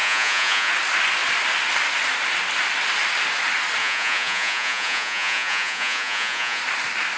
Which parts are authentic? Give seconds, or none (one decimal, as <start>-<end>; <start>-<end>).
0.7-3.8; 6.6-7.2